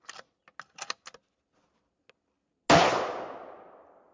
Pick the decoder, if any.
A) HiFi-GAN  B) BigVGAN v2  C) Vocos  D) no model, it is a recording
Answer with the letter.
D